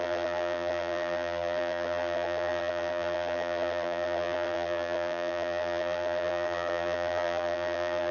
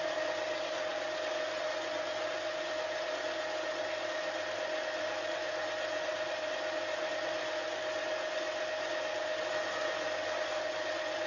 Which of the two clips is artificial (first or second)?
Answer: first